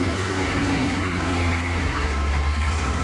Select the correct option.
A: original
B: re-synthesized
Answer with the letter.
B